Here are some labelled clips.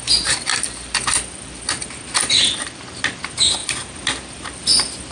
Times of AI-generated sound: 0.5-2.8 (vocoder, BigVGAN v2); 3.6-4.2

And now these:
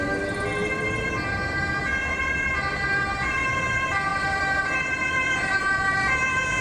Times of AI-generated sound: none